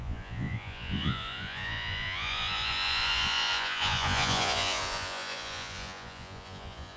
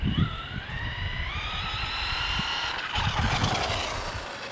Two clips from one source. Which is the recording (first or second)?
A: second